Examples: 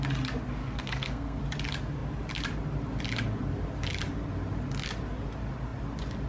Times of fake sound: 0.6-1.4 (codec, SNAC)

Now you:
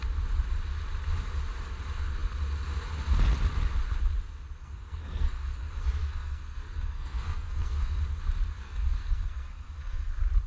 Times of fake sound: 4.6-8.0 (codec, SNAC); 8.5-10.1

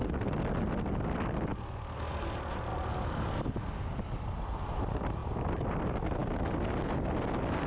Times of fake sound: 2.7-3.5 (vocoder, BigVGAN v2)

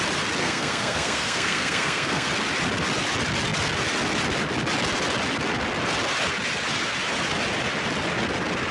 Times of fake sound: 0.4-2.3 (codec, SNAC)